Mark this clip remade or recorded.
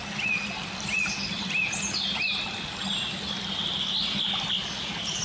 recorded